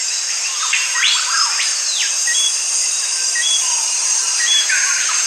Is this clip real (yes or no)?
no